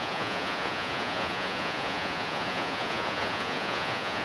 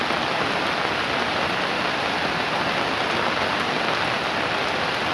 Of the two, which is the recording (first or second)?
second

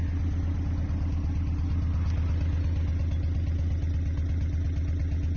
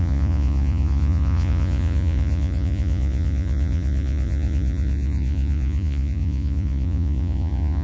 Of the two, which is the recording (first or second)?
first